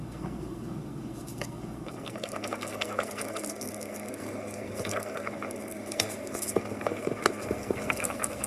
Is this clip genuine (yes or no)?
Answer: no